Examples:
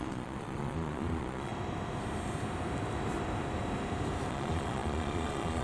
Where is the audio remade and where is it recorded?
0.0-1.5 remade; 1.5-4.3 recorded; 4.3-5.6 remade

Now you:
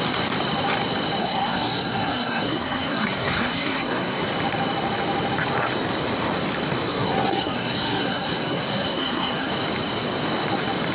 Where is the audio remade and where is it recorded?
0.0-1.2 recorded; 1.2-4.2 remade; 4.2-6.9 recorded; 6.9-9.5 remade; 9.5-10.9 recorded